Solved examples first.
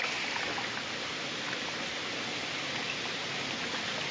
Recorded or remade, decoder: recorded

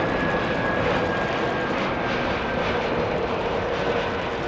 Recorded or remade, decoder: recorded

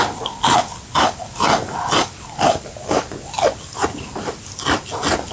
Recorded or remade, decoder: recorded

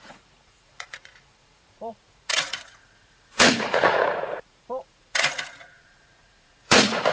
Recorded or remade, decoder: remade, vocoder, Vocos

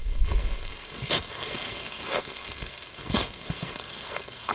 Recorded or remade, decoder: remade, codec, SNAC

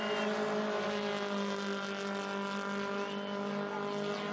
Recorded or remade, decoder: recorded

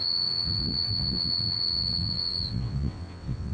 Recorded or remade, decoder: remade, vocoder, WaveNeXt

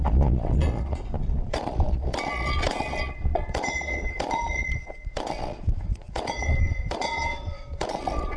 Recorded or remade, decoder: remade, vocoder, Vocos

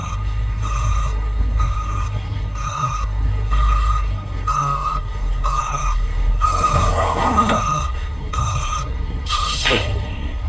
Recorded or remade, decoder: remade, codec, SNAC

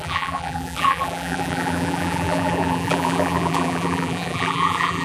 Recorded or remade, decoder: remade, vocoder, BigVGAN v2